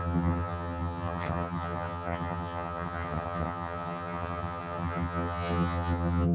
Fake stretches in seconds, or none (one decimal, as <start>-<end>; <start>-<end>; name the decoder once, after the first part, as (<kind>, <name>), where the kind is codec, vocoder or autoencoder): 0.0-6.3 (vocoder, HiFi-GAN)